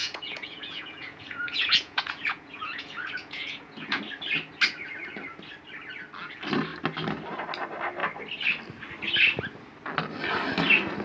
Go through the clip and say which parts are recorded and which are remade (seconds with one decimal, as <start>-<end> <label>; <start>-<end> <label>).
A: 0.0-4.0 remade; 4.0-11.0 recorded